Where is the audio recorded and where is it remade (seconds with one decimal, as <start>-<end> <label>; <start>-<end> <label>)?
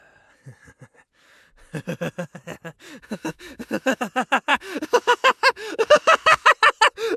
0.0-3.0 recorded; 3.0-4.0 remade; 4.0-4.5 recorded; 4.5-6.5 remade; 6.5-7.2 recorded